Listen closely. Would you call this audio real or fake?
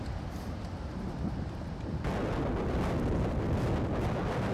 real